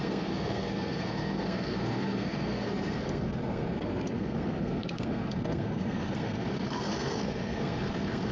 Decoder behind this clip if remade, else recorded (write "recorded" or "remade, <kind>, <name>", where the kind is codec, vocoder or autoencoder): remade, codec, SNAC